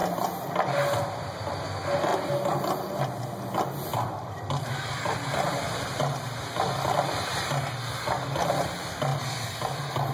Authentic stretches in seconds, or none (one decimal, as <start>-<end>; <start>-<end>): 0.0-3.9; 4.9-9.1; 9.7-10.1